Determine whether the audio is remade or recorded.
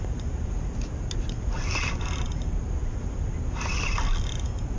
recorded